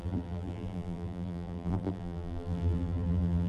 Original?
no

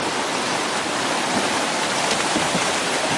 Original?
no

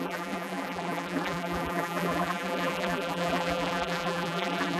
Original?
no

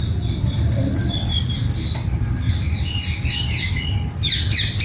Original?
yes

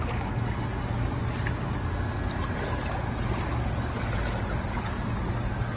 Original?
yes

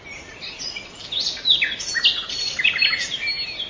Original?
yes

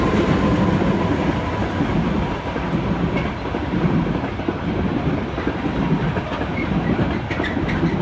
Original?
yes